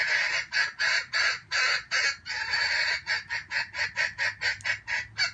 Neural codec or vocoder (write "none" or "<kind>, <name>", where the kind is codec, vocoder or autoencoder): none